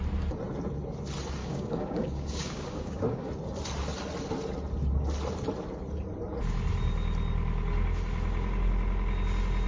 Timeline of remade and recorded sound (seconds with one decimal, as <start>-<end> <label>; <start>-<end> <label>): 0.0-1.4 recorded; 1.4-3.3 remade; 3.3-9.7 recorded